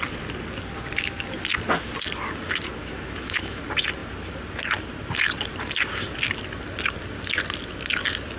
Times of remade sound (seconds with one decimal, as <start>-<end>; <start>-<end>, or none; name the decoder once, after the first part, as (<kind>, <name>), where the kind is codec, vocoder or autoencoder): 2.8-3.6 (autoencoder, DAC-VAE)